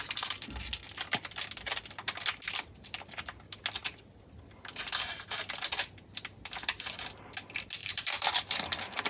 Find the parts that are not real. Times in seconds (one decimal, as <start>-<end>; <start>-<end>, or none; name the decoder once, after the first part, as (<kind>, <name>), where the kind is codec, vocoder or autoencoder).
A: 7.8-8.6 (vocoder, BigVGAN v2)

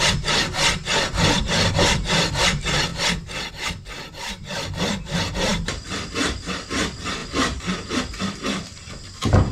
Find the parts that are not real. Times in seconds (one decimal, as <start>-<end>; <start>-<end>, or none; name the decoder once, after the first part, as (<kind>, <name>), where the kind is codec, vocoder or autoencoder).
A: none

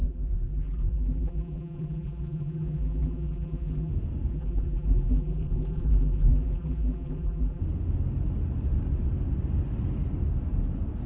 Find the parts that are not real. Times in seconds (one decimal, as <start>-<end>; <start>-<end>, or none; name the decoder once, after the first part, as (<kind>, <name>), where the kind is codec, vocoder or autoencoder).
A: 0.0-3.9 (vocoder, BigVGAN v2); 4.3-7.6

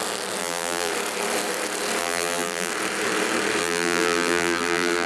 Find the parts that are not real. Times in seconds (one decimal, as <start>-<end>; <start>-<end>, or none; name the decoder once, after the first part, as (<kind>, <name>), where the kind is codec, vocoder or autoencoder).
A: 0.4-0.9 (vocoder, BigVGAN v2); 2.0-2.7; 3.6-5.1

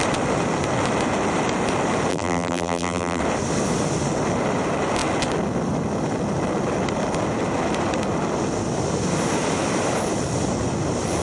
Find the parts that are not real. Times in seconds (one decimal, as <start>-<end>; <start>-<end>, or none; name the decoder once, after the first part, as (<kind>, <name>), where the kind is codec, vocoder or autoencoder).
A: 2.1-3.2 (vocoder, BigVGAN v2)

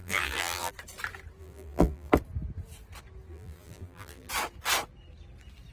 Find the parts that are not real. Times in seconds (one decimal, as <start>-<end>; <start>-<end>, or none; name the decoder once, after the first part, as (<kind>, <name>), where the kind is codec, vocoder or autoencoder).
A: 0.0-0.7 (vocoder, BigVGAN v2); 1.4-2.1; 3.3-4.3